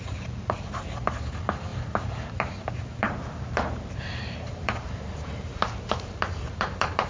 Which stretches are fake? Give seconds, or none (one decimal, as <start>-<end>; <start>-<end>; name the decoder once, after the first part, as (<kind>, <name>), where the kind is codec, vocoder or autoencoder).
0.0-7.1 (vocoder, BigVGAN v2)